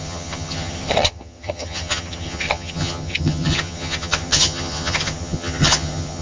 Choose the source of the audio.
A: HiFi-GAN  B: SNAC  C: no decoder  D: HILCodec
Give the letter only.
A